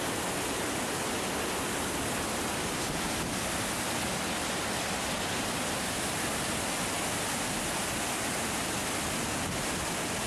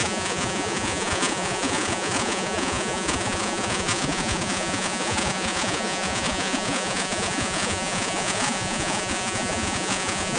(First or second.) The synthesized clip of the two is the second